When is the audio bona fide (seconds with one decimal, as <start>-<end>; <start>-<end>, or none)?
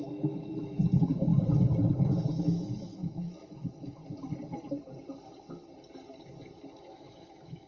1.3-2.4; 4.0-6.9